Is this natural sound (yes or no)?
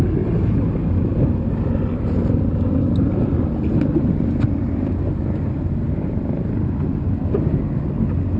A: yes